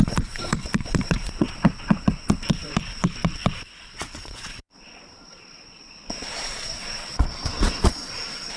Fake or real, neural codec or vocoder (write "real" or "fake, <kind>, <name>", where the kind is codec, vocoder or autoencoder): fake, vocoder, Vocos